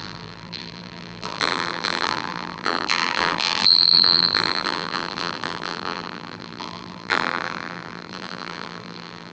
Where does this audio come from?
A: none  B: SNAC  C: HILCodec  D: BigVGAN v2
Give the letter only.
D